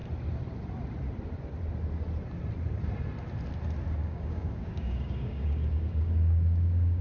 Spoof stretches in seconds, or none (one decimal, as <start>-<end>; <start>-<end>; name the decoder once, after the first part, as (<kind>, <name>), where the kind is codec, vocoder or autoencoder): 4.0-7.0 (codec, DAC)